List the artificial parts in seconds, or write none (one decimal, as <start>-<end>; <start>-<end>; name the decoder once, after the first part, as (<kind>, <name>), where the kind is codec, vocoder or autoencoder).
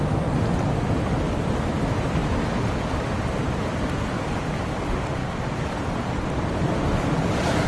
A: none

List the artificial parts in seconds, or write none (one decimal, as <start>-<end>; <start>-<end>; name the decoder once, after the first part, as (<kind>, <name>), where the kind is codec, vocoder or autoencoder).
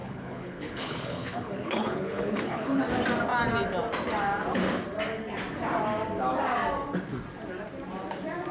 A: 0.0-2.8 (codec, HILCodec)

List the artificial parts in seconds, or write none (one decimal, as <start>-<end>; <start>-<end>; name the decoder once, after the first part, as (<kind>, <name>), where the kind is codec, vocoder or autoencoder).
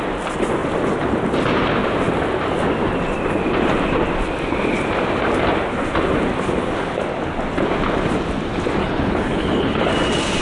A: 8.8-9.9 (codec, HILCodec)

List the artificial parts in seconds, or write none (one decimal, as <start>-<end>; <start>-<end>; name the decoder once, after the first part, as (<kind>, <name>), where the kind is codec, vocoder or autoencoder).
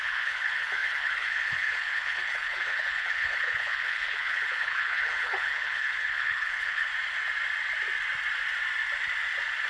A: 0.0-6.9 (codec, HILCodec)